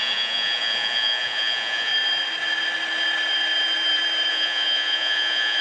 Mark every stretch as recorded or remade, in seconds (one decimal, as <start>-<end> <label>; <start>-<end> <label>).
0.0-1.9 remade; 1.9-4.3 recorded; 4.3-5.6 remade